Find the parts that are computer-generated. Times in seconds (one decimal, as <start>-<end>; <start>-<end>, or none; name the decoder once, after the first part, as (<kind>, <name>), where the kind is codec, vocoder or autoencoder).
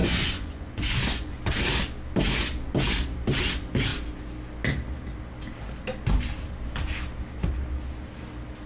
0.0-1.4 (vocoder, Vocos)